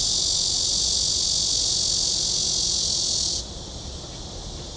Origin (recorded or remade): recorded